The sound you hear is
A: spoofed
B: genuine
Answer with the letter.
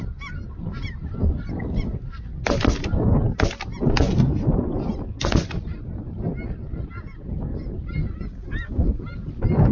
B